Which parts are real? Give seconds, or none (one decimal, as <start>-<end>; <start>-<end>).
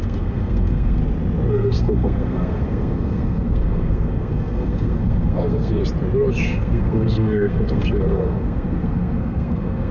1.0-1.5; 5.8-6.3